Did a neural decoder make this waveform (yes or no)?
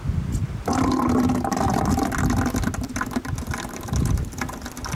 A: no